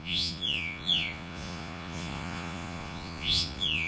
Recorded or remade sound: remade